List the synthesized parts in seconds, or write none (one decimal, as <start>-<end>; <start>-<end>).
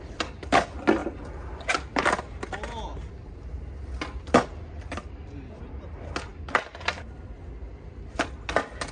none